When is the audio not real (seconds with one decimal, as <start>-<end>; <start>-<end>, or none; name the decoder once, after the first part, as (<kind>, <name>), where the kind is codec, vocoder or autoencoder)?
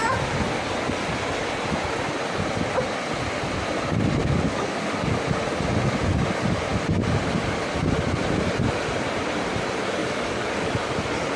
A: 4.2-5.1 (codec, DAC); 10.0-10.7